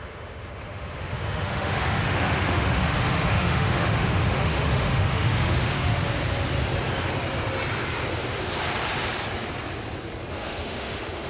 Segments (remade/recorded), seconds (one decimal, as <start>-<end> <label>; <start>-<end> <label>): 0.0-5.7 remade; 5.7-10.3 recorded; 10.3-11.3 remade